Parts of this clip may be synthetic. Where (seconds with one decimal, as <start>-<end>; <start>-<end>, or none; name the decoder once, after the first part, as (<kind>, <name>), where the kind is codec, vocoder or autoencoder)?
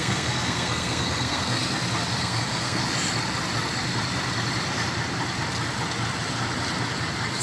0.0-1.6 (codec, SNAC); 2.2-2.8